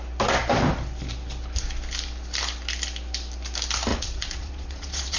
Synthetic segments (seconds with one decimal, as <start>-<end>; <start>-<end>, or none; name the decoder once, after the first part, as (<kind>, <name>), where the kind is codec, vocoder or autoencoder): 3.9-5.2 (vocoder, Vocos)